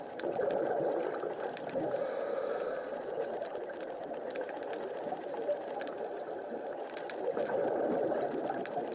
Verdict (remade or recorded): remade